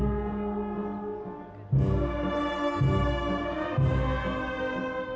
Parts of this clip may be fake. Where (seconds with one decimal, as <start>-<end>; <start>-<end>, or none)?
none